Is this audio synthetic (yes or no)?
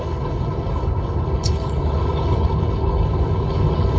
yes